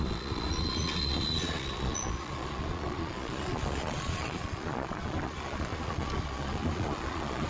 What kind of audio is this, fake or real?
fake